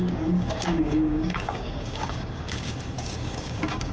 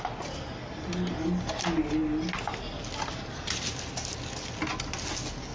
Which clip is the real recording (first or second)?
second